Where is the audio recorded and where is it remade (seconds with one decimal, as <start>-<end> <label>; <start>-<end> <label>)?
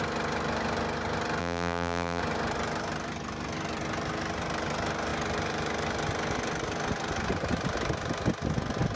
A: 0.0-1.4 recorded; 1.4-2.2 remade; 2.2-9.0 recorded